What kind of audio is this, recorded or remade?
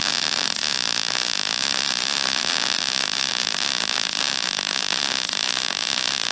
recorded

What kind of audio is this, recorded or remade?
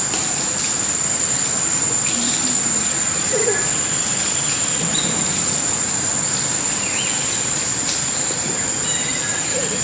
recorded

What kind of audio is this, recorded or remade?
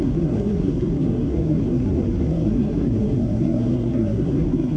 remade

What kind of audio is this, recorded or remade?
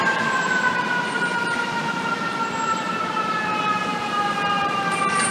remade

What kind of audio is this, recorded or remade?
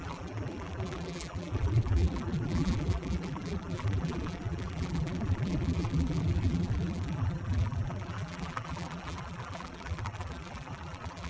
remade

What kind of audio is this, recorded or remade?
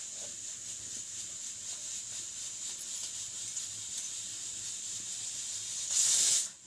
recorded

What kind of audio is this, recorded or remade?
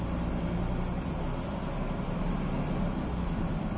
recorded